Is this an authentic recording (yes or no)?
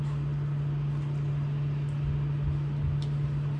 yes